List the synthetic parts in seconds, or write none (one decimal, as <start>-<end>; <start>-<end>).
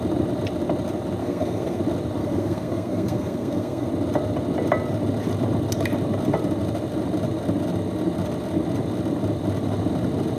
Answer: 1.2-1.8; 2.2-3.9